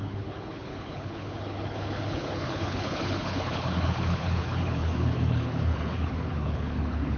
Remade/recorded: remade